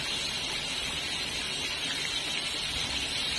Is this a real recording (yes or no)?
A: yes